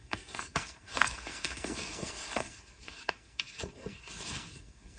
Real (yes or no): no